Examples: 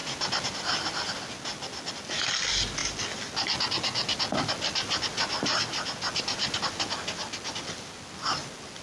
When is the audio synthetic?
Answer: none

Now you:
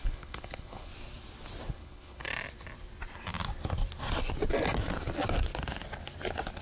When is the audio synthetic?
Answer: 0.0-0.9; 1.7-2.3

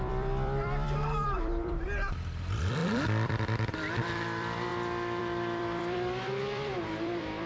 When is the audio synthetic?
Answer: 0.0-4.7; 5.2-7.5